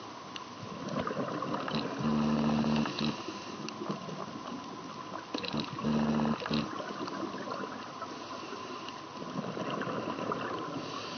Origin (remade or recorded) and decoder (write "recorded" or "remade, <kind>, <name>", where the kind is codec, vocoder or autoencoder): recorded